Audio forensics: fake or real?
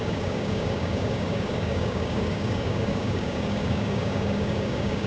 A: fake